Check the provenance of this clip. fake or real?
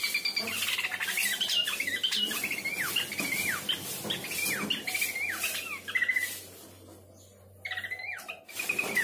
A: real